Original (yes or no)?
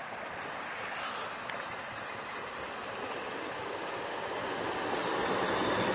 yes